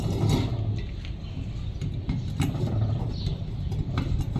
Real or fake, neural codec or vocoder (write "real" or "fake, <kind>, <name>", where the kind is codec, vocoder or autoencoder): real